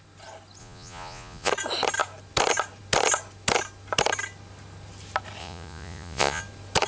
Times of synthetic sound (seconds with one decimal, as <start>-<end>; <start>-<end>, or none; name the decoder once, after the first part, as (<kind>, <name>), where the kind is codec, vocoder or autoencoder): 0.6-1.5 (vocoder, Vocos); 5.4-6.4